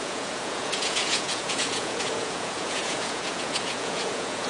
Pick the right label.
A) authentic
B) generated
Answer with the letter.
B